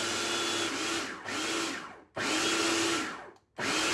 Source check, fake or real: real